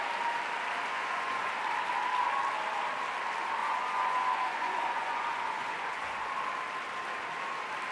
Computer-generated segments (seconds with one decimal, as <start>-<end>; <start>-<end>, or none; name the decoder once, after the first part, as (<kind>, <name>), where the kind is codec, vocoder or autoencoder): 0.9-1.5 (vocoder, Vocos); 3.6-6.3